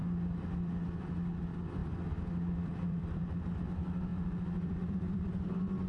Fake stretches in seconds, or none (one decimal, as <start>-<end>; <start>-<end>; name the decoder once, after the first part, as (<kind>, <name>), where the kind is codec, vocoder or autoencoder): 1.8-3.3 (vocoder, BigVGAN v2); 4.1-5.5